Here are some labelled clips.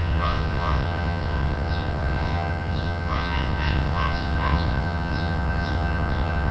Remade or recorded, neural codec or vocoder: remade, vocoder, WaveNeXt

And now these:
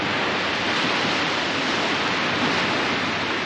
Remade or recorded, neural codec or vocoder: recorded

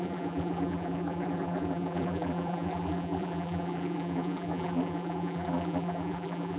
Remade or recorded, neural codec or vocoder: remade, vocoder, BigVGAN v2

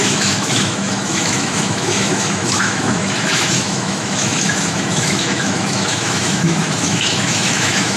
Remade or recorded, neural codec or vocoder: remade, autoencoder, DAC-VAE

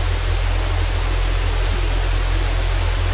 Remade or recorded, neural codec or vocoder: recorded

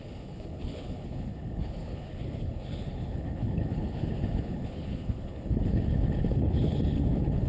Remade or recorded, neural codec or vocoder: remade, codec, HILCodec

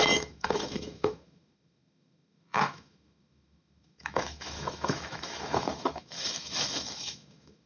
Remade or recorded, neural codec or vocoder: remade, autoencoder, DAC-VAE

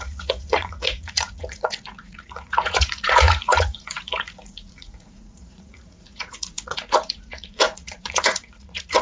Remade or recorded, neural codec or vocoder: remade, vocoder, Vocos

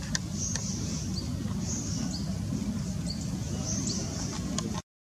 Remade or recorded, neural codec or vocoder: recorded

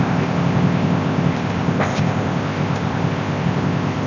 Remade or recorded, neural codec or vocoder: remade, codec, ZipCodec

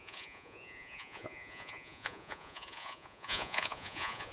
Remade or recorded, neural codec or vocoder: remade, vocoder, Vocos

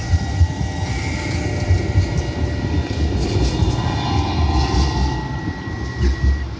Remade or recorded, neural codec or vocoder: recorded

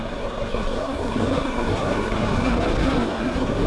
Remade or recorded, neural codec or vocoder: remade, codec, SNAC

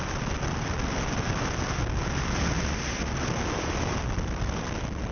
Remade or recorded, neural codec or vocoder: recorded